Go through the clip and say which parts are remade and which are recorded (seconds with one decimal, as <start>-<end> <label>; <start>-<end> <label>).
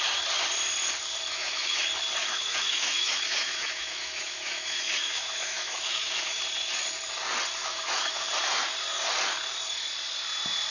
0.0-1.3 recorded; 1.3-1.8 remade; 1.8-2.2 recorded; 2.2-6.4 remade; 6.4-7.6 recorded; 7.6-8.3 remade; 8.3-10.7 recorded